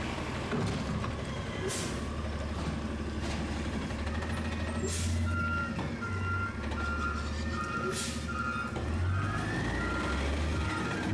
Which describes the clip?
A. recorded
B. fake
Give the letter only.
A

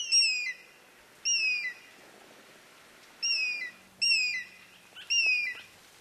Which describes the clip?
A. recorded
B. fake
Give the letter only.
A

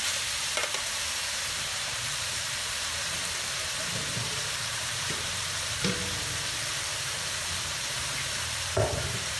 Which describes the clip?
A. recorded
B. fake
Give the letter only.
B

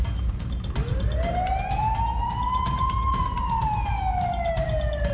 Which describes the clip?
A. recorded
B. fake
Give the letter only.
A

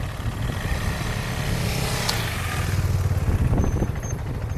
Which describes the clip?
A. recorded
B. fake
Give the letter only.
A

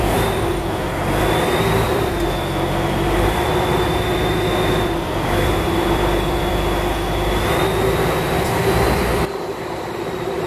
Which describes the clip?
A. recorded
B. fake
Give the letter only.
B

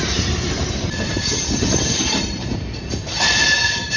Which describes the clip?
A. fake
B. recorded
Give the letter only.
A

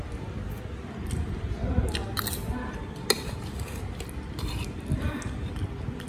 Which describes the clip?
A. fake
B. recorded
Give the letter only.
B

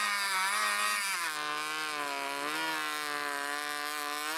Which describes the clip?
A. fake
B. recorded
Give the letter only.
B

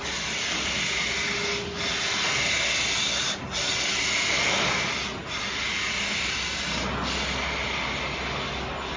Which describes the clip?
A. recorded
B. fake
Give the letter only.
A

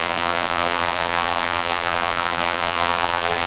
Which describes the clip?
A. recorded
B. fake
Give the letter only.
B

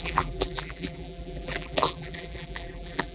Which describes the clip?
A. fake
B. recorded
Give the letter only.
A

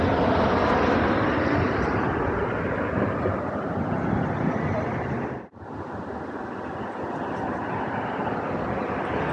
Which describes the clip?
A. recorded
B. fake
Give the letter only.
B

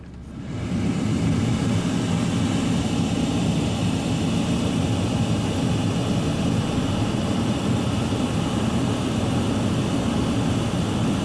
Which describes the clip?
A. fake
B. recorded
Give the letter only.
B